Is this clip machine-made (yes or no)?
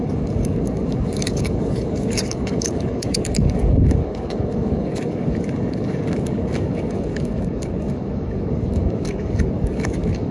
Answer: yes